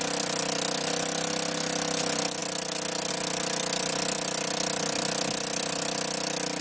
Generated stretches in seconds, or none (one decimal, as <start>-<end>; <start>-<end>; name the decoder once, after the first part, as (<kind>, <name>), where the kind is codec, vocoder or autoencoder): none